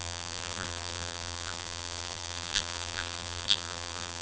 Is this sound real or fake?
fake